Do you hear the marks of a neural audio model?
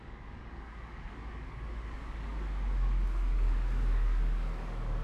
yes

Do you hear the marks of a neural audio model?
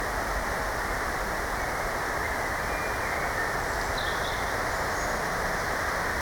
no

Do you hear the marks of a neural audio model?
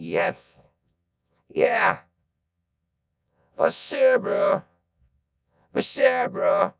yes